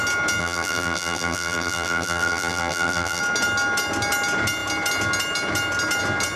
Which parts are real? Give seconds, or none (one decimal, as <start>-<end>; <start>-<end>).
0.0-0.4; 3.2-6.4